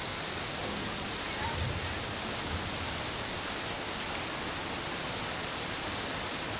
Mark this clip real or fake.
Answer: real